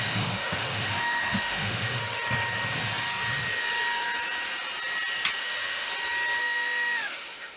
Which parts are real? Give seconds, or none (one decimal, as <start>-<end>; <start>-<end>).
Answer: 2.0-5.4; 5.9-6.4